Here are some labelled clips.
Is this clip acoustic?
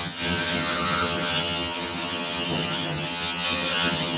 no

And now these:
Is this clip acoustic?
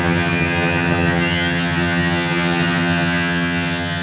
no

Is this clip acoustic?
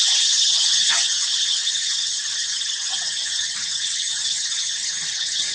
no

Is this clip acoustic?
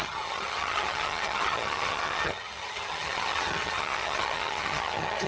no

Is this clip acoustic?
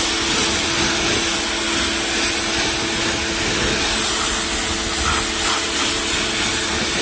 yes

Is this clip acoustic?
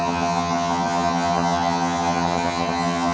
no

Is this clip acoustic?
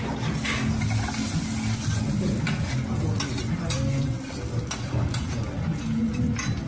yes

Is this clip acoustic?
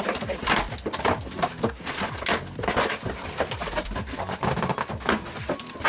yes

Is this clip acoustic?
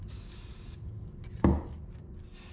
yes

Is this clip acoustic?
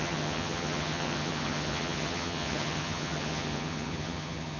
no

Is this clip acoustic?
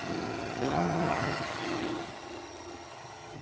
no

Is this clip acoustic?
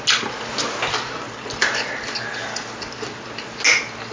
yes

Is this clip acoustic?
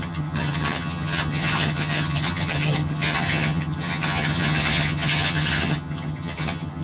no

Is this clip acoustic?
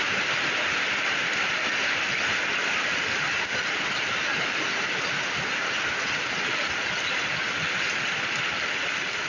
yes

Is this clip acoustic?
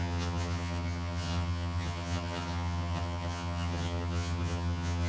no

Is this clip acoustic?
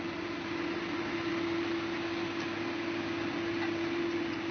yes